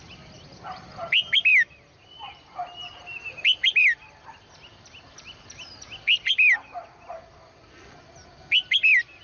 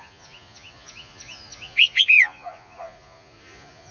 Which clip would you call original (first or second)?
first